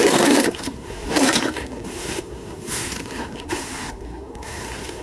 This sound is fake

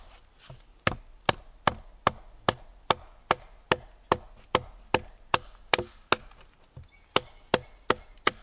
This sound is real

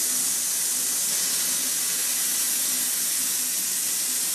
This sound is real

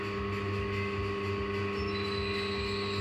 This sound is real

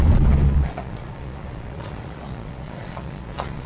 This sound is fake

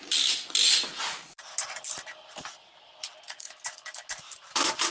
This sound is real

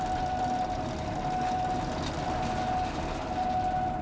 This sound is real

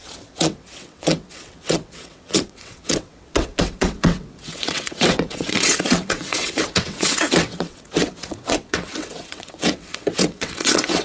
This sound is fake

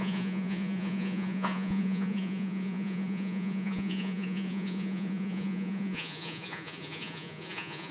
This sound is fake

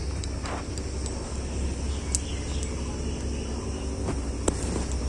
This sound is real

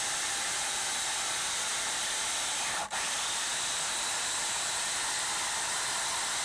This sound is fake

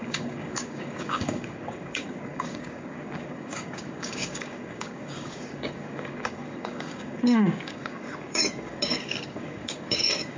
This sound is fake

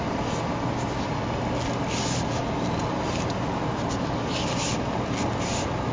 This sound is real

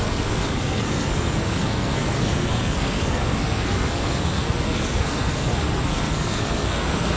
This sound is fake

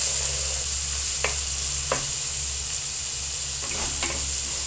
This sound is real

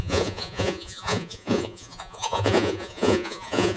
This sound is fake